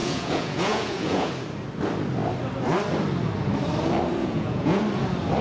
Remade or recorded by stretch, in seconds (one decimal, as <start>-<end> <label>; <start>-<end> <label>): 0.0-1.3 remade; 1.3-4.2 recorded; 4.2-4.8 remade; 4.8-5.4 recorded